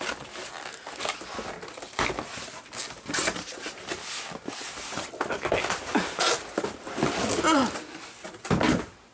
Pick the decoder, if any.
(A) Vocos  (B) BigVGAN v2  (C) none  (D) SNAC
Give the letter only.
C